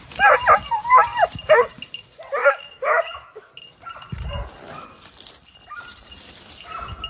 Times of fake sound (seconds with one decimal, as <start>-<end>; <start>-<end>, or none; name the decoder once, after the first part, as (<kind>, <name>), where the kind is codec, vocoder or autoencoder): 2.4-3.5 (autoencoder, DAC-VAE)

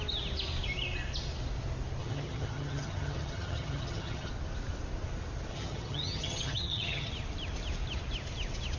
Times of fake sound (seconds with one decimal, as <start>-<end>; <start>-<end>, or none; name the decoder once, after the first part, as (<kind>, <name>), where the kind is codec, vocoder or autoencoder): 2.0-4.3 (vocoder, HiFi-GAN); 5.5-7.1

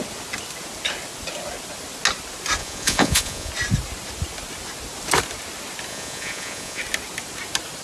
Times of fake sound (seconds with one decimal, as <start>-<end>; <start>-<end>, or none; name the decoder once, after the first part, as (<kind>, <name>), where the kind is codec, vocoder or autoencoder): 2.6-3.5 (vocoder, Vocos); 5.9-6.8

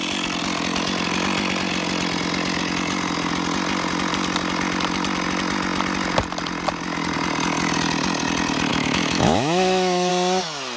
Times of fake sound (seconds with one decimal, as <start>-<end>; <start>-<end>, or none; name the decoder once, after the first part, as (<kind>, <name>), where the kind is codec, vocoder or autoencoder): 8.7-10.1 (autoencoder, DAC-VAE)

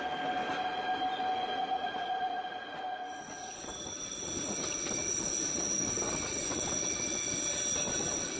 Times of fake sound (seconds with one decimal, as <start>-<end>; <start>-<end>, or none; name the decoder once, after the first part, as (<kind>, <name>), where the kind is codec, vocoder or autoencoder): 1.5-5.2 (vocoder, Vocos); 5.7-6.8

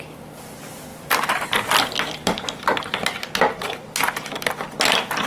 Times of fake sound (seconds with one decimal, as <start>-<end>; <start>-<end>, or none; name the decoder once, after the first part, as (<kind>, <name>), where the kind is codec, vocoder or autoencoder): 0.9-1.5 (vocoder, BigVGAN v2)

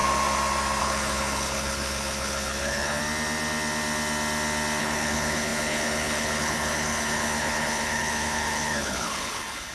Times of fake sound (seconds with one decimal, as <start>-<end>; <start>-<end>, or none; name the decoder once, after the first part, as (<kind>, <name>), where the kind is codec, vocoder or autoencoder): 0.8-3.0 (codec, HILCodec); 4.8-9.7